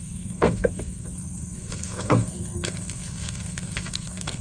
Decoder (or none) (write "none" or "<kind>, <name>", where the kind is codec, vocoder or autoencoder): codec, SNAC